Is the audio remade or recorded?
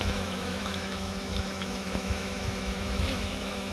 remade